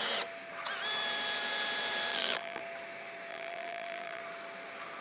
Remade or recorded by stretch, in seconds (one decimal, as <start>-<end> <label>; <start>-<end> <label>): 0.0-2.1 recorded; 2.1-2.6 remade; 2.6-3.3 recorded; 3.3-4.2 remade; 4.2-5.0 recorded